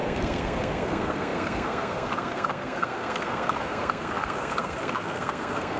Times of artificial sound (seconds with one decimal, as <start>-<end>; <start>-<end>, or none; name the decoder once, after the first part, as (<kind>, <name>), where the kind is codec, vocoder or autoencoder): 0.0-5.8 (codec, SNAC)